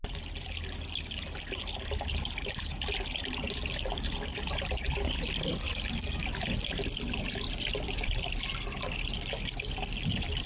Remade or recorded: recorded